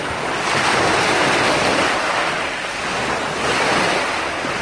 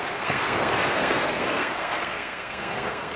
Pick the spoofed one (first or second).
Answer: second